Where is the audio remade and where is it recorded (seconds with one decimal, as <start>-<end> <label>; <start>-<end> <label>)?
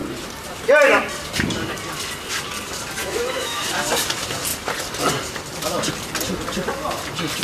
0.0-3.0 recorded; 3.0-3.7 remade; 3.7-7.4 recorded